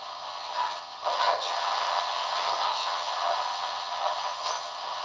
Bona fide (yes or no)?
no